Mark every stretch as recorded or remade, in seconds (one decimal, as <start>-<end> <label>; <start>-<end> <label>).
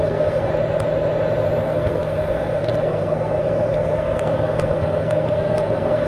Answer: 0.0-0.5 remade; 0.5-1.6 recorded; 1.6-6.1 remade